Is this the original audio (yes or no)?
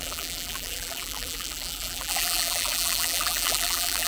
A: no